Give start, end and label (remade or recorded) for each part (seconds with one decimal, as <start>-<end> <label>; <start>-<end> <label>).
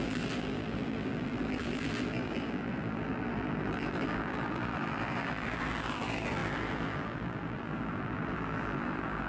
0.0-9.3 remade